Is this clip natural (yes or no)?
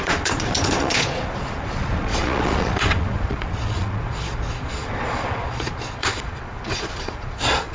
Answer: no